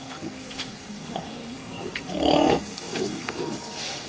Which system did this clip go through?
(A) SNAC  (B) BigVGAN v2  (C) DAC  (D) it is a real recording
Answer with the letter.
A